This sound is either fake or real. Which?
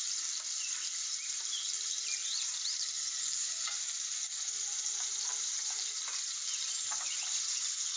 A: fake